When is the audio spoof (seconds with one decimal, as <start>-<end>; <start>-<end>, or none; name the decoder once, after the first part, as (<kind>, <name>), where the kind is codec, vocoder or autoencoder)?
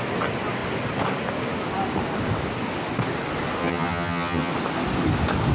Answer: 3.6-4.5 (vocoder, HiFi-GAN)